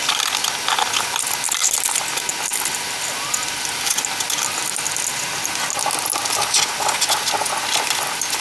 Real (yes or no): yes